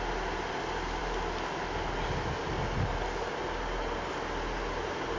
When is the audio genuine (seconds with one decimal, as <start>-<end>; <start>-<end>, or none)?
0.0-5.2